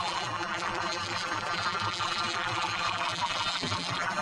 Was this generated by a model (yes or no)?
yes